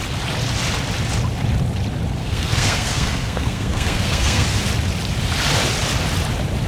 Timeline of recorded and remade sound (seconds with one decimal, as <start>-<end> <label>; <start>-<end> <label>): 0.0-2.2 recorded; 2.2-4.6 remade; 4.6-6.7 recorded